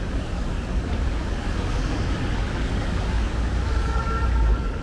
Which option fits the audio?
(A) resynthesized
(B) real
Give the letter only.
A